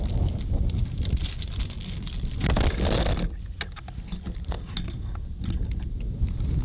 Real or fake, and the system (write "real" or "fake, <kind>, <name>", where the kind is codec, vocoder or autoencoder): real